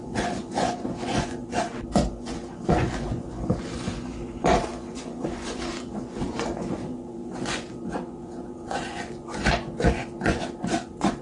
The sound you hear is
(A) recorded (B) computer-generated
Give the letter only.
B